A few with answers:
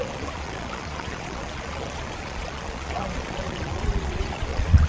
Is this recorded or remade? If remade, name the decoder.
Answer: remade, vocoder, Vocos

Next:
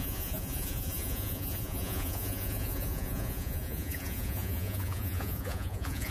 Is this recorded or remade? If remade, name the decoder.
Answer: remade, vocoder, Vocos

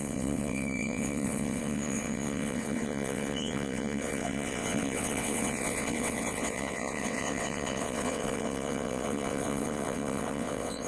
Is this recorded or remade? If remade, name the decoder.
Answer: remade, vocoder, WaveNeXt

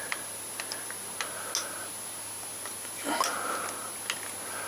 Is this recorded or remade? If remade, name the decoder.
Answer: recorded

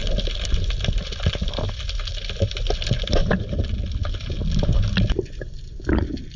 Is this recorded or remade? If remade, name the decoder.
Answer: remade, vocoder, BigVGAN v2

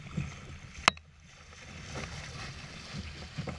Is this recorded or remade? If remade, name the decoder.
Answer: recorded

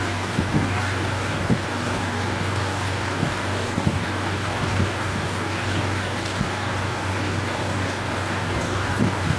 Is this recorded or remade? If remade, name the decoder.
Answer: remade, codec, DAC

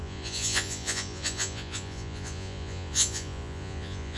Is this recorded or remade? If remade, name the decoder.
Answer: remade, vocoder, Vocos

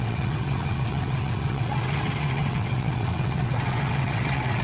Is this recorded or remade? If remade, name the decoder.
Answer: remade, vocoder, WaveNeXt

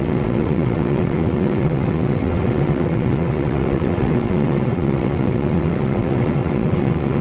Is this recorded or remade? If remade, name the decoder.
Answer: remade, vocoder, WaveNeXt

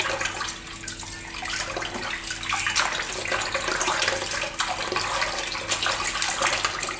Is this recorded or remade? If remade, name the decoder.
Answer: recorded